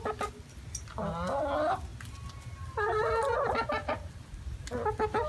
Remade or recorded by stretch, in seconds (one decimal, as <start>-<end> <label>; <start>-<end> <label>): 0.0-5.3 recorded